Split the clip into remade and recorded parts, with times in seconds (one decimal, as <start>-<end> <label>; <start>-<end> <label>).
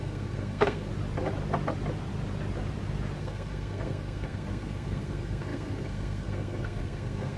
0.0-0.9 remade; 0.9-3.2 recorded; 3.2-7.4 remade